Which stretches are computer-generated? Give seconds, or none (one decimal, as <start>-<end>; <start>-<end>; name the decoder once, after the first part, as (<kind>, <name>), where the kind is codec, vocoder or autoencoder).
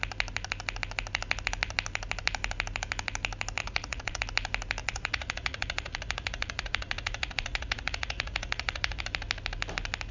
3.6-4.2 (vocoder, Vocos); 4.8-9.0